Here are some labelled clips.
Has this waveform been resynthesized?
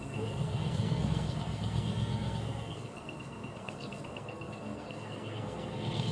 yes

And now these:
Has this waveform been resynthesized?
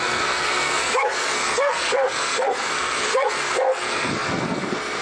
yes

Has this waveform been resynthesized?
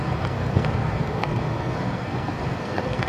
yes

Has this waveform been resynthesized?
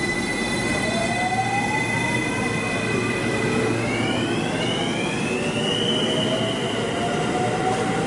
no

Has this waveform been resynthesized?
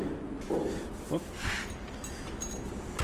no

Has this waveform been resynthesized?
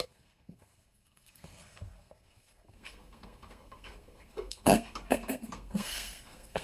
yes